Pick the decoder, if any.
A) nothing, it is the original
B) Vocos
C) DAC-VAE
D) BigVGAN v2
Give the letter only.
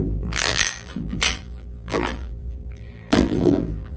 D